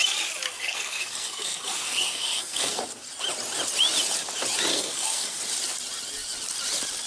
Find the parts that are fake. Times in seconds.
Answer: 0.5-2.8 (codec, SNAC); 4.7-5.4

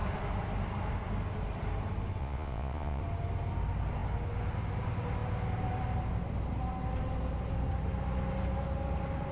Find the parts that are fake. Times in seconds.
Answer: 2.2-3.0 (vocoder, Vocos)

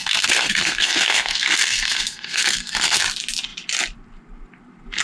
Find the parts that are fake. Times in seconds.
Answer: 0.0-3.0 (codec, SNAC)

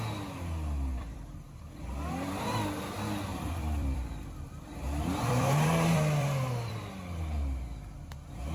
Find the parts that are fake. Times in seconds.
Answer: 0.9-2.3 (vocoder, BigVGAN v2); 3.3-6.9

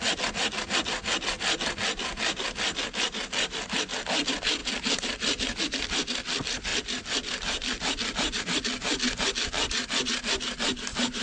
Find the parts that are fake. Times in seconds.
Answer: 4.6-5.6 (vocoder, BigVGAN v2); 6.7-8.4

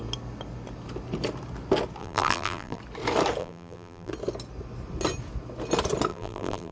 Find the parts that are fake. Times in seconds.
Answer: 2.0-2.8 (vocoder, BigVGAN v2); 3.4-4.1; 6.1-6.7